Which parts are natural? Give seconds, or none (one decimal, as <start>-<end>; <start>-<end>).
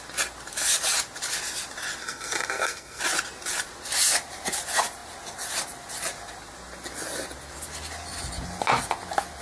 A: 0.0-2.0; 3.0-9.4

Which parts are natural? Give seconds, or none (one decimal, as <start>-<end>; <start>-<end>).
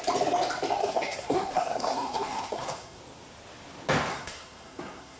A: 0.0-0.8; 3.0-4.1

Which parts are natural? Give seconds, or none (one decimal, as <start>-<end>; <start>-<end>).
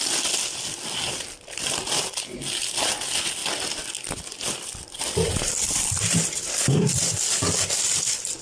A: 0.0-8.4